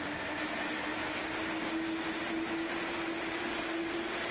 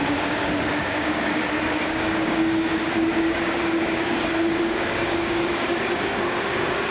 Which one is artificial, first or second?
second